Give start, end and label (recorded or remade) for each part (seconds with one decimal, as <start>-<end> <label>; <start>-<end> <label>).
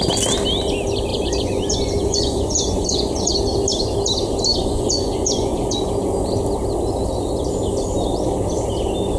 0.0-1.1 recorded; 1.1-3.3 remade; 3.3-4.5 recorded; 4.5-5.9 remade; 5.9-9.2 recorded